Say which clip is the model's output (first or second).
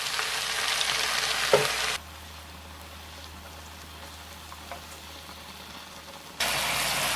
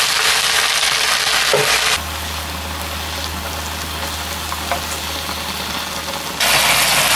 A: first